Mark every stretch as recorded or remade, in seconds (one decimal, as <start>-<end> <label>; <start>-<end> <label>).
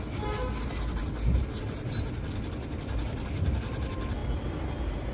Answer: 0.0-5.1 recorded